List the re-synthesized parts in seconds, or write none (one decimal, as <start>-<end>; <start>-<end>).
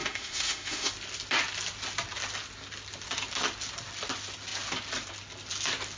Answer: 0.0-0.9